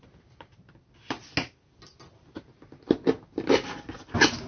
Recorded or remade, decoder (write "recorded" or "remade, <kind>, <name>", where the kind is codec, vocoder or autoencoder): recorded